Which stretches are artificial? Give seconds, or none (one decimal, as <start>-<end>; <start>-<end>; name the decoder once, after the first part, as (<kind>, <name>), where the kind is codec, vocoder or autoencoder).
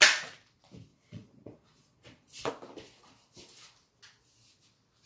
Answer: 0.9-2.5 (vocoder, Vocos)